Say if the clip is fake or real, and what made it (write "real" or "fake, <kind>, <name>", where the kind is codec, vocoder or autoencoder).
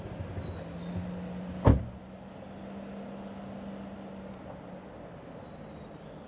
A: real